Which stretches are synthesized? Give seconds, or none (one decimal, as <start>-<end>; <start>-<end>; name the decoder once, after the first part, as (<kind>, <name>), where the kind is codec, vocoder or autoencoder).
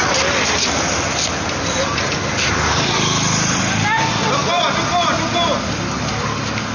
none